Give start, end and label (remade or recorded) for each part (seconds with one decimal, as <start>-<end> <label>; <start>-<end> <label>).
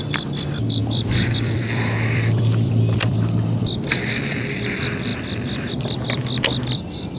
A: 0.0-0.8 recorded; 0.8-3.9 remade; 3.9-5.1 recorded; 5.1-5.7 remade; 5.7-7.2 recorded